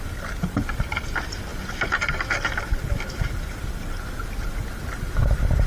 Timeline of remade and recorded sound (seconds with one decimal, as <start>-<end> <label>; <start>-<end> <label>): 0.0-5.7 recorded